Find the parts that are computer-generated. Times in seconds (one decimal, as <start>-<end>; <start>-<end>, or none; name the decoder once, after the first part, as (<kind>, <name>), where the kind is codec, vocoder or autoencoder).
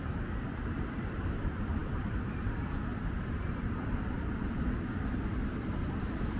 0.0-6.4 (vocoder, BigVGAN v2)